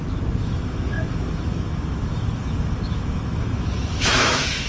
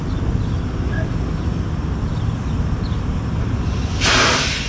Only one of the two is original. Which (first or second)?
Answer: second